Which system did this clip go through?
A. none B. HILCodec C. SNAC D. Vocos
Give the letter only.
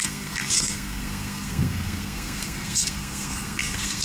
C